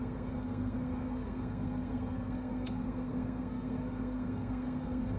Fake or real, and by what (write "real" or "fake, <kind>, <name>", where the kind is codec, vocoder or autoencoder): fake, codec, SNAC